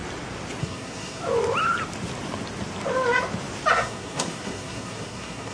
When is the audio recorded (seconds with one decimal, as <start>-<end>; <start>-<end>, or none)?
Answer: 0.0-0.6; 1.2-3.7